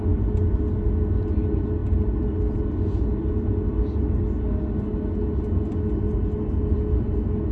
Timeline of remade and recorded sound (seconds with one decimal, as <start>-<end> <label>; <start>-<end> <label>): 0.0-7.5 recorded